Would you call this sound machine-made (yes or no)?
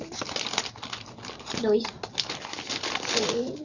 no